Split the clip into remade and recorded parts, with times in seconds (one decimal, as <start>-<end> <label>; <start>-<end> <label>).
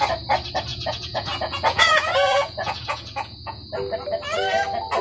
0.0-0.7 recorded; 0.7-3.7 remade; 3.7-5.0 recorded